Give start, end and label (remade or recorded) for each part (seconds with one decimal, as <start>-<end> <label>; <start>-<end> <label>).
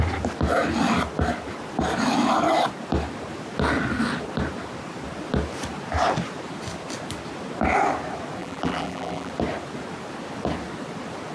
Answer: 0.0-8.4 recorded; 8.4-9.3 remade; 9.3-11.3 recorded